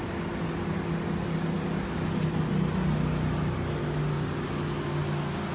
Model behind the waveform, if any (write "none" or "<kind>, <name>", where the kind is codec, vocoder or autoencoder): none